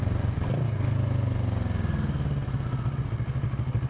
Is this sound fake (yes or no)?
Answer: no